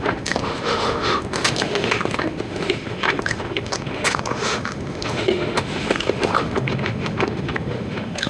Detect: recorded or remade remade